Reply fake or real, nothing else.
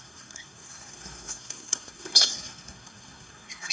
fake